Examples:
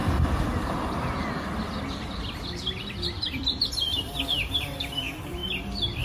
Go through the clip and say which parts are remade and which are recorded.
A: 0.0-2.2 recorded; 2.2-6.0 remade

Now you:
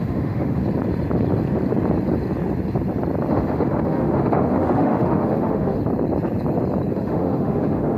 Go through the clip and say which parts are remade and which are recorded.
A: 0.0-0.6 remade; 0.6-3.3 recorded; 3.3-5.8 remade; 5.8-6.9 recorded; 6.9-8.0 remade

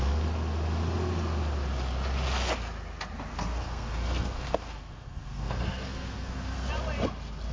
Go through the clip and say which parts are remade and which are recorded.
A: 0.0-3.3 recorded; 3.3-6.7 remade; 6.7-7.5 recorded

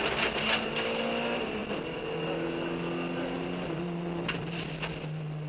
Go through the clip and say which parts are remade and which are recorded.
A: 0.0-5.5 recorded